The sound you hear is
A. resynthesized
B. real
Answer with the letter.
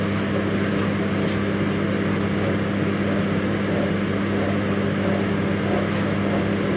B